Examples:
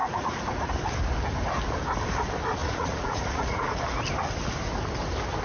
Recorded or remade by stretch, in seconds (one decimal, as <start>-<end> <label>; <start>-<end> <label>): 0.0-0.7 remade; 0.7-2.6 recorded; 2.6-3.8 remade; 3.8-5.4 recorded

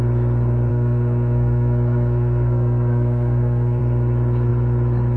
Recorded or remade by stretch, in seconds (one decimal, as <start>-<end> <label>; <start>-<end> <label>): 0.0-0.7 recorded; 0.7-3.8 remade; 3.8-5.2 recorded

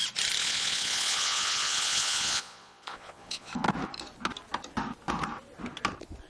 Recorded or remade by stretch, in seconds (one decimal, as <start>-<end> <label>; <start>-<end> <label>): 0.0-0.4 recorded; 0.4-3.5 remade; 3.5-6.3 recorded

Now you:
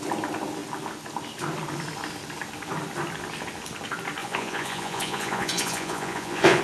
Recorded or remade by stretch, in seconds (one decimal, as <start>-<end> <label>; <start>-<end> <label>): 0.0-4.2 recorded; 4.2-6.6 remade